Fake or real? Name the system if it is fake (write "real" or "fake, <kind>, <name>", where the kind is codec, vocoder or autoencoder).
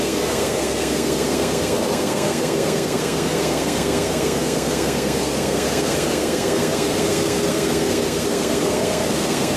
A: fake, codec, SNAC